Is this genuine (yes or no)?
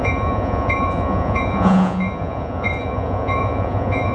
no